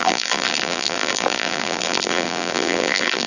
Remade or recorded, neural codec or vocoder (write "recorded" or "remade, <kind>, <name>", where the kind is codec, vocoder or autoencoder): remade, vocoder, BigVGAN v2